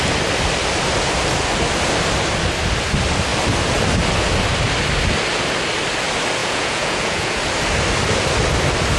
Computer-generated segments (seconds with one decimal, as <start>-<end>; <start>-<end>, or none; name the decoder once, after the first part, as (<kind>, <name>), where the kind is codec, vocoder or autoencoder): 6.4-7.4 (vocoder, Vocos)